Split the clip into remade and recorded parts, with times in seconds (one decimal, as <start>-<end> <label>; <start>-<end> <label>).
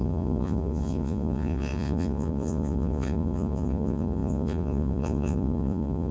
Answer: 0.0-6.1 remade